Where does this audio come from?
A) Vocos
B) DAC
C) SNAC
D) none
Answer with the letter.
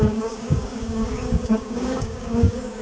B